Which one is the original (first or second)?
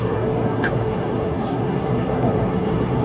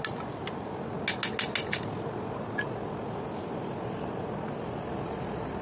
second